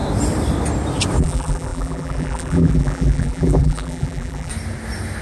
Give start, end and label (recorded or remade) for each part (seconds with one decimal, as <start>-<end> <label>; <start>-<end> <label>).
0.0-1.2 recorded; 1.2-4.5 remade; 4.5-5.2 recorded

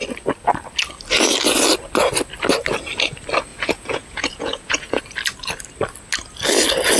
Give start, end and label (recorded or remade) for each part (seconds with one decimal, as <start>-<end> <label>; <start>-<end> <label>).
0.0-3.5 recorded; 3.5-5.0 remade; 5.0-7.0 recorded

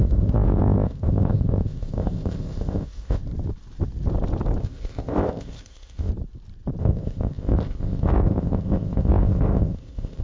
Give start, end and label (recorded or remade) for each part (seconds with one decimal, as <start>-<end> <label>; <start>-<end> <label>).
0.0-3.2 remade; 3.2-4.6 recorded; 4.6-6.1 remade; 6.1-6.8 recorded; 6.8-10.2 remade

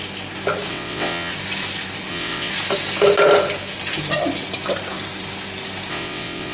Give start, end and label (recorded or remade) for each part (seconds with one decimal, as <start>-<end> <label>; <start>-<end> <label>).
0.0-0.7 recorded; 0.7-1.3 remade; 1.3-2.1 recorded; 2.1-2.5 remade; 2.5-5.9 recorded; 5.9-6.5 remade

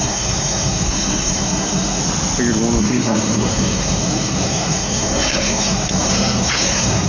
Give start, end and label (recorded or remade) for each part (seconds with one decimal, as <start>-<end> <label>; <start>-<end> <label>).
0.0-2.0 remade; 2.0-2.8 recorded; 2.8-7.1 remade